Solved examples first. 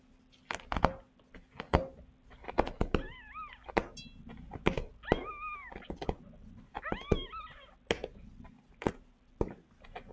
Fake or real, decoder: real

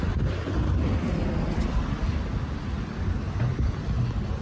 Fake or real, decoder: real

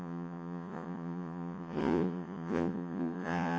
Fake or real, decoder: fake, vocoder, Vocos